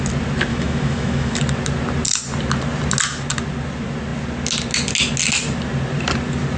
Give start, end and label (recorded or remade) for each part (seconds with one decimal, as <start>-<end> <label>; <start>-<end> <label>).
0.0-0.5 recorded; 0.5-1.4 remade; 1.4-6.6 recorded